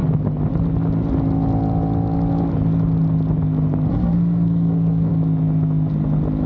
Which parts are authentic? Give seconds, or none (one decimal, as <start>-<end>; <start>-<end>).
0.0-3.9; 5.1-6.5